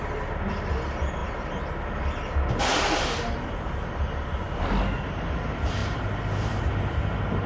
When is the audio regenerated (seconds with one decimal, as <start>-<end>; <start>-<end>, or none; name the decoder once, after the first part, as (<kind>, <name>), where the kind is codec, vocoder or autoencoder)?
none